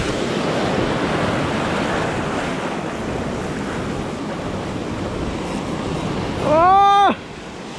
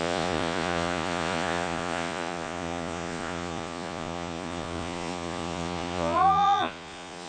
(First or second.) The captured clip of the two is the first